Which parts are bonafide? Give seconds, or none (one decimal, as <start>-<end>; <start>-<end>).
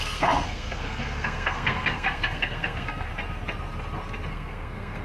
3.1-4.3